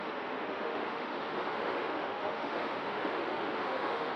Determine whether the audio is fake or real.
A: fake